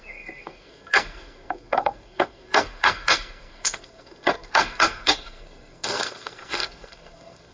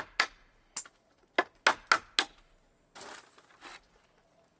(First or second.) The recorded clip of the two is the second